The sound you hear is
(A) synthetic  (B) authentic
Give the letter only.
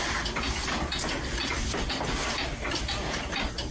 B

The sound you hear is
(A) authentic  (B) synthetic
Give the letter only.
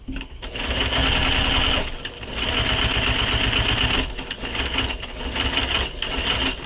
A